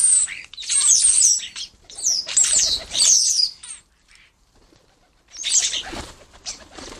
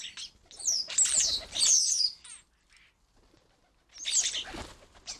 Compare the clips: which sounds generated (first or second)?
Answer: first